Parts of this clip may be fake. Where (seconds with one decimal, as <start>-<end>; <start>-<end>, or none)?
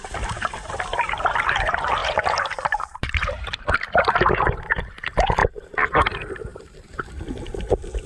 2.0-3.8; 5.4-6.0; 6.5-7.1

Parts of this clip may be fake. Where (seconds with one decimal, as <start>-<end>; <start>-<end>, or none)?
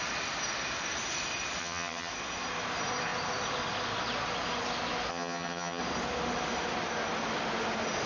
1.6-2.1; 5.1-5.8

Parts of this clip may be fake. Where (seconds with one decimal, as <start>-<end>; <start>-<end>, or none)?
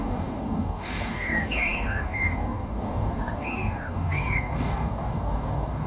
0.0-5.9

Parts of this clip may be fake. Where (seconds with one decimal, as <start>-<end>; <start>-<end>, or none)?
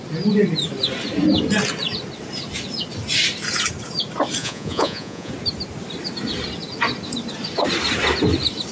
4.4-5.3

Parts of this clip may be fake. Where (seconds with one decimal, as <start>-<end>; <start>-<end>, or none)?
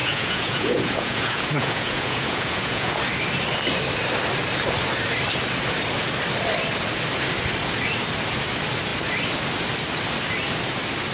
0.0-3.0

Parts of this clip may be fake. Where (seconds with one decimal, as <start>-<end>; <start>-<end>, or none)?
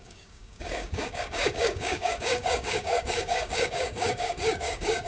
0.0-5.1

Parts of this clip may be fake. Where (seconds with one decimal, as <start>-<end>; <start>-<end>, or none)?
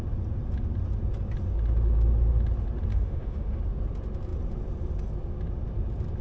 2.9-3.6